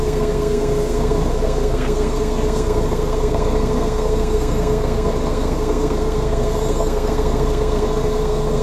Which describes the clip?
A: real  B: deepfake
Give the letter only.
B